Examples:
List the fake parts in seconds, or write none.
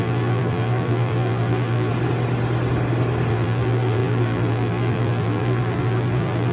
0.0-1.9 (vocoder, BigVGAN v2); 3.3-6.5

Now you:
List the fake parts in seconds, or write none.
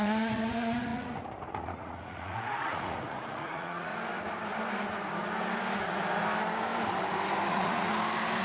0.0-3.9 (vocoder, Vocos); 7.5-7.9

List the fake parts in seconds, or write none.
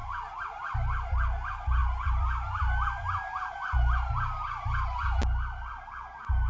0.0-0.5 (vocoder, BigVGAN v2)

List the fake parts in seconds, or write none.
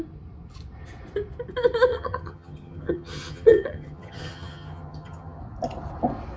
1.9-5.4 (vocoder, HiFi-GAN)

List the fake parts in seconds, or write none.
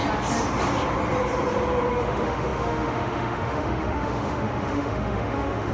1.9-5.7 (autoencoder, DAC-VAE)